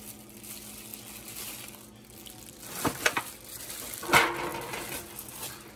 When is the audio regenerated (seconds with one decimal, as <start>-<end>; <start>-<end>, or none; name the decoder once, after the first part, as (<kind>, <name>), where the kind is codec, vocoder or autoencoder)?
none